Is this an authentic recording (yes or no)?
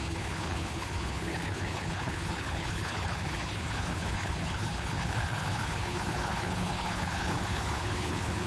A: no